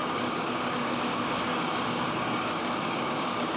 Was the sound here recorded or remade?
remade